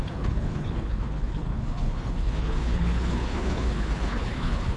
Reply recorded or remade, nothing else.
remade